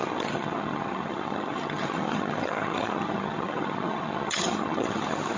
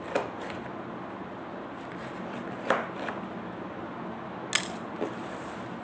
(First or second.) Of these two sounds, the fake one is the first